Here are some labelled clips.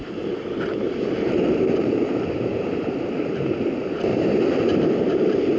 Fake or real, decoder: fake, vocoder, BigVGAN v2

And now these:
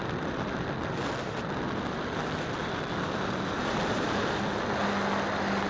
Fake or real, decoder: real